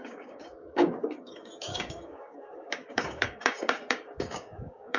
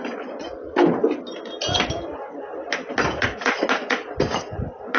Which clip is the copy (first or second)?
first